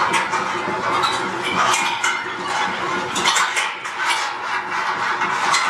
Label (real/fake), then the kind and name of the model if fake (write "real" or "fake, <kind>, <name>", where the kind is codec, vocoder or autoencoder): fake, vocoder, Vocos